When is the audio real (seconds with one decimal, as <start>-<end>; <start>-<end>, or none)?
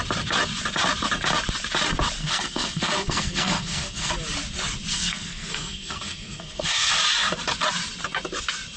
0.0-2.2; 4.1-4.9; 6.9-8.8